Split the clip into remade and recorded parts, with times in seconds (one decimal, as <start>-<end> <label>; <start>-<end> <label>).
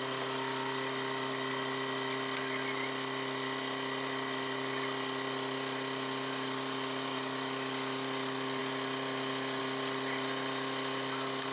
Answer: 0.0-11.5 recorded